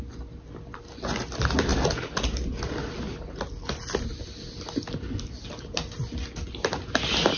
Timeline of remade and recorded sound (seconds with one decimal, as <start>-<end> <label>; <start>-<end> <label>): 0.0-7.4 recorded